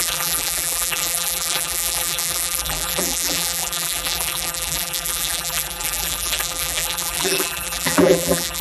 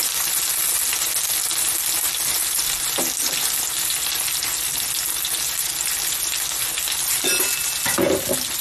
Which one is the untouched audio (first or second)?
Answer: second